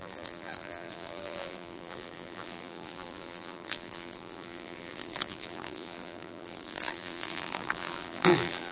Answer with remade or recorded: remade